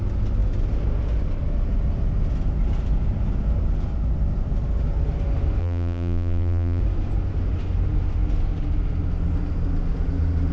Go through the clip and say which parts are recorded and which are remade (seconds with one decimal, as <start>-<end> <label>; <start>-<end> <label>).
0.0-5.6 recorded; 5.6-6.8 remade; 6.8-10.5 recorded